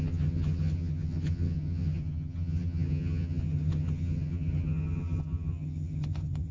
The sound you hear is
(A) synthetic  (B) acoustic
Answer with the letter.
A